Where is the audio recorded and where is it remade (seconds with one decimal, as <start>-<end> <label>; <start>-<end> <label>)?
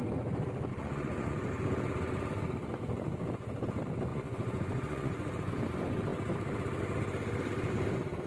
0.0-0.7 recorded; 0.7-1.5 remade; 1.5-4.1 recorded; 4.1-5.5 remade; 5.5-8.3 recorded